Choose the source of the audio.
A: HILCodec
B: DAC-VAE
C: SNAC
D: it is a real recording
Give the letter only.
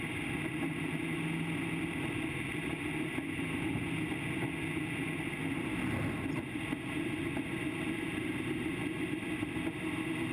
D